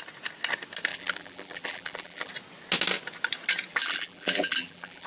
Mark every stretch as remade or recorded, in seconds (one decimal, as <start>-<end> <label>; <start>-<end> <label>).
0.0-0.9 recorded; 0.9-2.3 remade; 2.3-3.7 recorded; 3.7-5.1 remade